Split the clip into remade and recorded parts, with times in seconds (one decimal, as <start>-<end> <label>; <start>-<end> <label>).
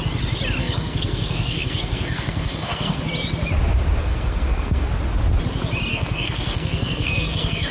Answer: 0.0-0.6 recorded; 0.6-3.0 remade; 3.0-4.0 recorded; 4.0-4.9 remade; 4.9-5.9 recorded; 5.9-7.7 remade